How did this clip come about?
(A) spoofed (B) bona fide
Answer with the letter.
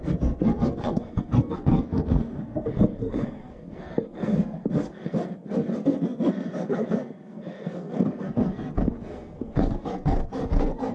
A